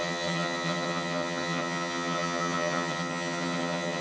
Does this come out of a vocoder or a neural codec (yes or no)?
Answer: yes